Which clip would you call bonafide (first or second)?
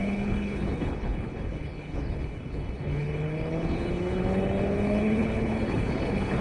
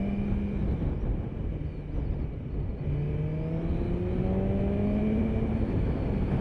second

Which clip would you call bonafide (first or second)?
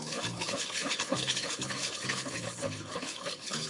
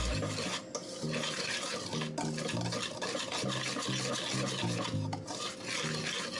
second